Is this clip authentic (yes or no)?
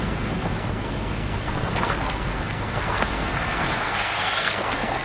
no